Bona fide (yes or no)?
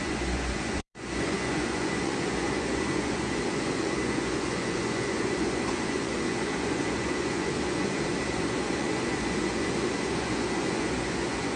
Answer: no